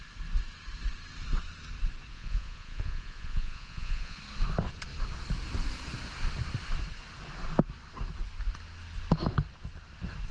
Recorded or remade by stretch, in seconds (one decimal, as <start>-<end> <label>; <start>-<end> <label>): 0.0-2.1 recorded; 2.1-4.2 remade; 4.2-10.3 recorded